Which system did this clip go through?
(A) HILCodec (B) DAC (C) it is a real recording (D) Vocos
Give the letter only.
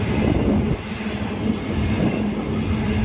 C